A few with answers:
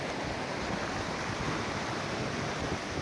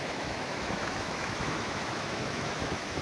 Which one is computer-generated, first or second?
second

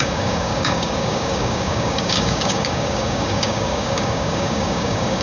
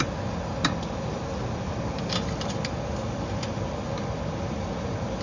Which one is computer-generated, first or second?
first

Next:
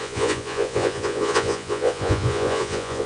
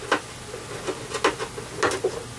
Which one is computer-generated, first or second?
first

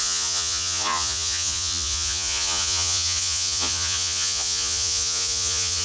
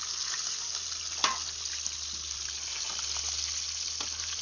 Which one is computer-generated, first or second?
first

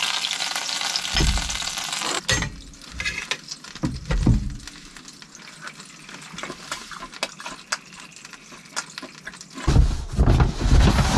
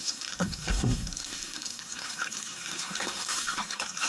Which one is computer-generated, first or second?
second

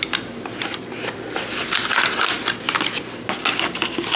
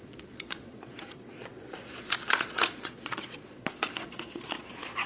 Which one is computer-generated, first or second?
second